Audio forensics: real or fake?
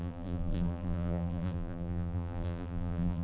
fake